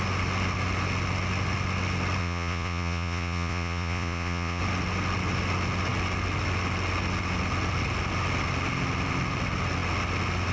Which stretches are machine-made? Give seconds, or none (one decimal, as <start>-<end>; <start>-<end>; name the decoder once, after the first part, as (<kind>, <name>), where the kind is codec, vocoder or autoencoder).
2.2-4.6 (vocoder, Vocos)